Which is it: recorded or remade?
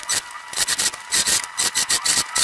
recorded